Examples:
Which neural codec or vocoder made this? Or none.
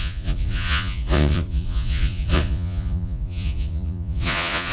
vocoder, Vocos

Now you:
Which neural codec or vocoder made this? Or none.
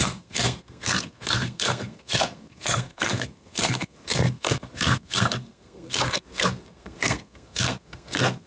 codec, SNAC